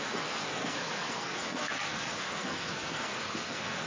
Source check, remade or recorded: remade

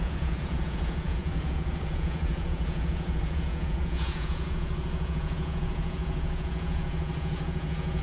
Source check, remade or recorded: remade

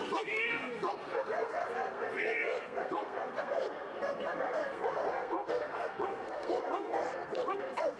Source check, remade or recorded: remade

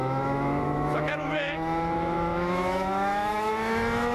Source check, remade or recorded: remade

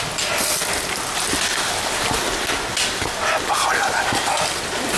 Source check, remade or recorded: recorded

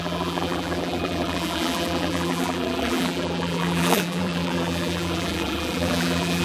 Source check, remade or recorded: remade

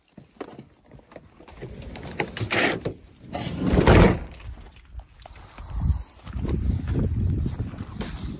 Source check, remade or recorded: remade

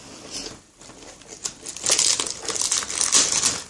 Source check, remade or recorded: recorded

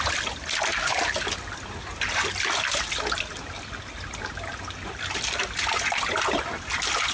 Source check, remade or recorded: recorded